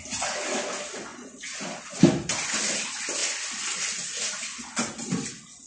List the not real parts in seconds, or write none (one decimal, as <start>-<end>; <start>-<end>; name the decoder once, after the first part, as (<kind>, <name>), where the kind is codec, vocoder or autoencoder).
1.1-1.8 (vocoder, Vocos)